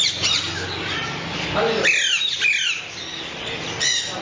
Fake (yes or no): no